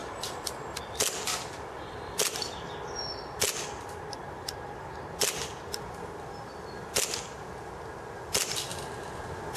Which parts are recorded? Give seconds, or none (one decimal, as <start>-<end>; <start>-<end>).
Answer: 0.0-9.6